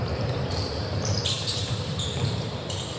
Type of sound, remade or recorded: remade